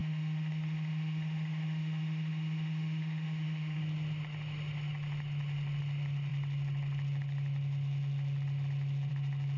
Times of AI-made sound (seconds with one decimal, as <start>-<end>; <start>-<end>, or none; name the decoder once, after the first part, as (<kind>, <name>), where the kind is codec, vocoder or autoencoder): 0.0-3.8 (autoencoder, DAC-VAE)